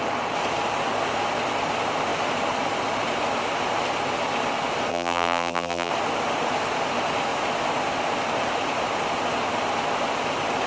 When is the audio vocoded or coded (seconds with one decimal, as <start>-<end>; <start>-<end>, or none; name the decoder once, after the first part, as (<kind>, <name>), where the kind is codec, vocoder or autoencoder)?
4.9-5.9 (vocoder, BigVGAN v2)